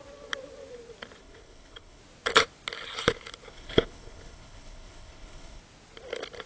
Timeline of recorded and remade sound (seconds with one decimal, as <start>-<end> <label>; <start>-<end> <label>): 0.0-1.2 recorded; 1.2-2.0 remade; 2.0-3.5 recorded; 3.5-5.6 remade; 5.6-6.5 recorded